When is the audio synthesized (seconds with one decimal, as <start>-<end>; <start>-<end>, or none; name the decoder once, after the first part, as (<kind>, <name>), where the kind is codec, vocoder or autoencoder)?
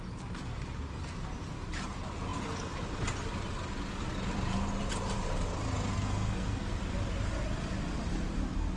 5.9-6.8 (codec, SNAC)